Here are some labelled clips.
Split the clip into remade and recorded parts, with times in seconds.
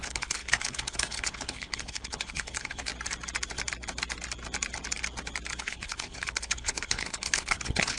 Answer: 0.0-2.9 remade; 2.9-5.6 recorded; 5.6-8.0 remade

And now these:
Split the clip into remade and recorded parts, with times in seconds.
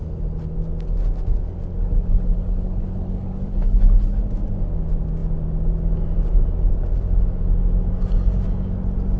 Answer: 0.0-1.8 recorded; 1.8-4.2 remade; 4.2-9.2 recorded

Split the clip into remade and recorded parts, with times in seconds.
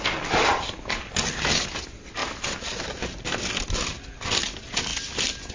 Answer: 0.0-2.2 recorded; 2.2-2.8 remade; 2.8-5.5 recorded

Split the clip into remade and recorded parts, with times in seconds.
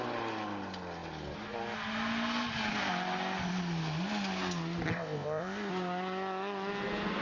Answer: 0.0-4.9 recorded; 4.9-5.7 remade; 5.7-7.2 recorded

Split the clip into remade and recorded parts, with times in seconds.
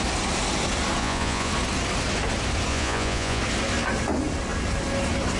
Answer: 0.0-1.0 recorded; 1.0-1.5 remade; 1.5-2.7 recorded; 2.7-3.4 remade; 3.4-5.4 recorded